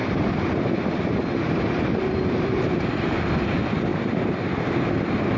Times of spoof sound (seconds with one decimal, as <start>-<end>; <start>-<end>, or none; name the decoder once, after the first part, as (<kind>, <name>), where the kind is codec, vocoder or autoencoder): 0.0-3.2 (vocoder, BigVGAN v2); 3.9-5.0